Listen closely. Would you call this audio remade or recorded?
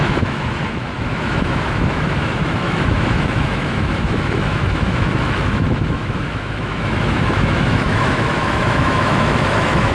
remade